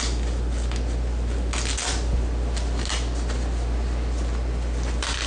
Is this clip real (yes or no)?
yes